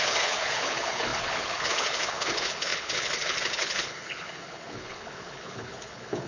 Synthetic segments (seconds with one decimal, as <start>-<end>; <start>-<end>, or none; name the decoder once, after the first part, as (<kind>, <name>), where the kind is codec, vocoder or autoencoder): 0.0-6.3 (codec, HILCodec)